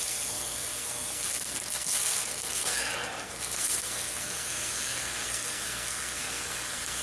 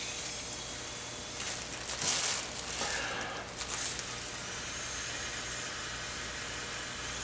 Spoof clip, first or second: first